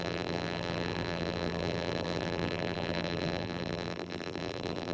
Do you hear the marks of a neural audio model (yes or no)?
yes